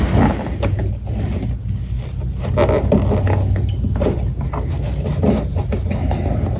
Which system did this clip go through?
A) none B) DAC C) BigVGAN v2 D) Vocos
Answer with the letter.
A